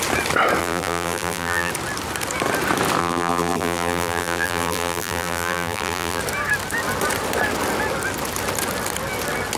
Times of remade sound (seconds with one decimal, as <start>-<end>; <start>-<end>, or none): 0.6-1.7; 3.0-6.2